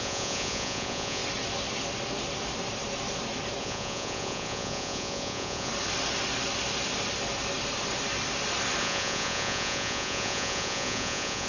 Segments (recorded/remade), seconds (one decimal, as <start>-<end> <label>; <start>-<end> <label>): 0.0-1.2 remade; 1.2-3.6 recorded; 3.6-5.7 remade; 5.7-8.8 recorded; 8.8-11.5 remade